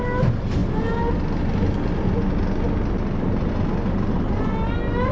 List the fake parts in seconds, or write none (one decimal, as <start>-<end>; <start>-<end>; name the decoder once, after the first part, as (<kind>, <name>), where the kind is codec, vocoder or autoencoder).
none